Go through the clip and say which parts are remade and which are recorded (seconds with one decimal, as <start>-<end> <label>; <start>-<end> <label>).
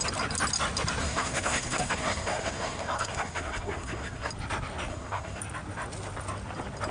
0.0-1.0 recorded; 1.0-4.3 remade; 4.3-4.9 recorded; 4.9-5.4 remade; 5.4-6.9 recorded